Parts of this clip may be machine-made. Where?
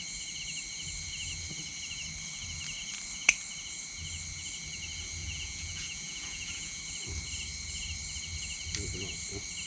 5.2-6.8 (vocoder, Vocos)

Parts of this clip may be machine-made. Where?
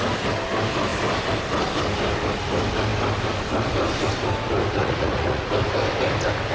4.8-5.5 (vocoder, Vocos)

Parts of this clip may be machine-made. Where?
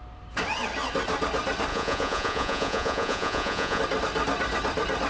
1.7-3.8 (vocoder, Vocos)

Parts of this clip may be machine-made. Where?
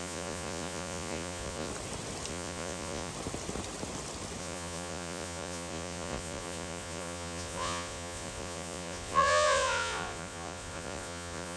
0.0-1.7 (vocoder, Vocos); 2.3-3.1; 4.4-11.6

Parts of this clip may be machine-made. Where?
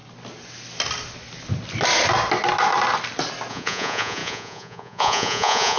3.5-5.8 (vocoder, Vocos)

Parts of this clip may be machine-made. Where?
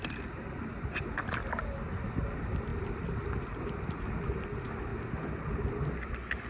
none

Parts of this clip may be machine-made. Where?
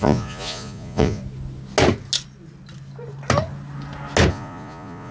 0.0-1.2 (vocoder, Vocos); 4.3-5.1